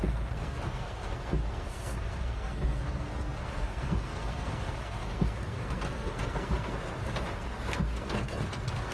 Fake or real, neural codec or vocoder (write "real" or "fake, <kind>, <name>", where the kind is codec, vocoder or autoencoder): fake, codec, SNAC